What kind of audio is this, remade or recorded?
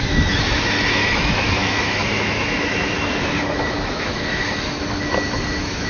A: remade